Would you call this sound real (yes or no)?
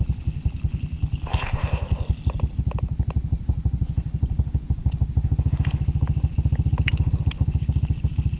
yes